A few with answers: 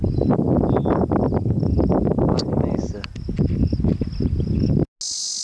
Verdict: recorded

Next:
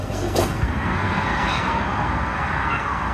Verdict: remade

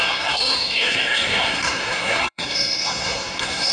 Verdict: remade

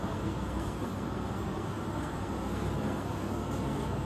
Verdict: remade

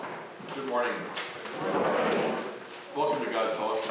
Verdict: recorded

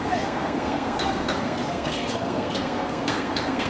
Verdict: remade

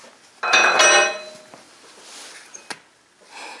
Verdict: recorded